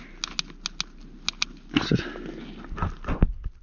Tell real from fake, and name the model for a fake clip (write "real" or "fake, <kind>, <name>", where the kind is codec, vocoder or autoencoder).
real